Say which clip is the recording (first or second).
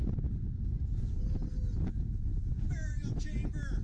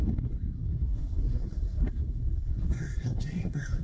first